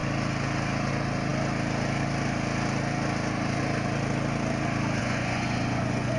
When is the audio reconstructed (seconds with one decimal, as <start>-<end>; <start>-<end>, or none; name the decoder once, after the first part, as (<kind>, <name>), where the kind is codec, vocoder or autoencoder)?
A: 5.0-6.2 (vocoder, Vocos)